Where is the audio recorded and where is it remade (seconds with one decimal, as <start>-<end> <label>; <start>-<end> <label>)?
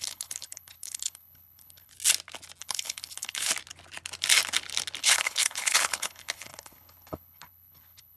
0.0-1.9 remade; 1.9-2.6 recorded; 2.6-3.5 remade; 3.5-5.0 recorded; 5.0-8.2 remade